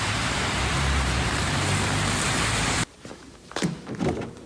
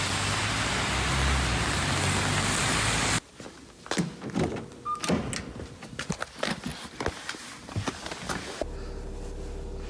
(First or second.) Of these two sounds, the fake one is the first